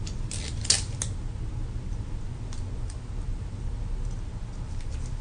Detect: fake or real real